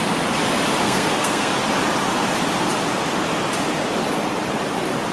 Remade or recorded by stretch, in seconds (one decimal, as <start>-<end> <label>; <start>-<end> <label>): 0.0-0.8 recorded; 0.8-1.5 remade; 1.5-5.1 recorded